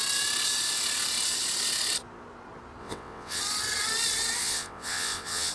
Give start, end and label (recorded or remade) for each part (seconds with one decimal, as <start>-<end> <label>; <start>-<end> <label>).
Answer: 0.0-2.8 recorded; 2.8-3.4 remade; 3.4-4.4 recorded; 4.4-5.5 remade